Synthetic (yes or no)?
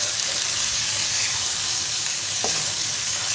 yes